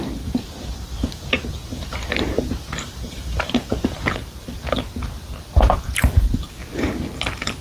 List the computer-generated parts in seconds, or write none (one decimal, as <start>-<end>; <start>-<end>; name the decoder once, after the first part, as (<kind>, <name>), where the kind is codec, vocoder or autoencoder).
1.7-4.6 (vocoder, BigVGAN v2)